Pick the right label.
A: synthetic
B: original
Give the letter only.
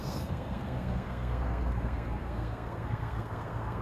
A